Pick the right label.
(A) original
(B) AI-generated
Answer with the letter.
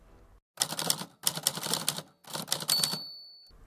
A